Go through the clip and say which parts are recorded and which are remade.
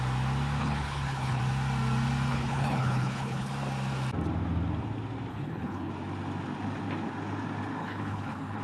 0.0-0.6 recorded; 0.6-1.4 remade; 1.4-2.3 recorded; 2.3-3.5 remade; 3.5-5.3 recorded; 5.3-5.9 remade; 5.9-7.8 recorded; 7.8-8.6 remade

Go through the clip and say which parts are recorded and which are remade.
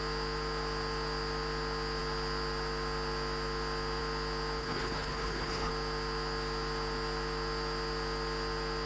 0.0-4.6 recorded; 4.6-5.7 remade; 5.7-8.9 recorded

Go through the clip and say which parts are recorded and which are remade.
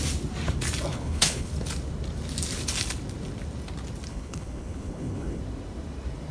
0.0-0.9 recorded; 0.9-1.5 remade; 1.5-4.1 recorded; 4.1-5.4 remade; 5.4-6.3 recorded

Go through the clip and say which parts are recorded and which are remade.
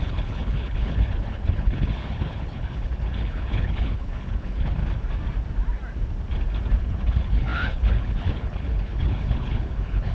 0.0-4.8 remade; 4.8-6.8 recorded; 6.8-10.1 remade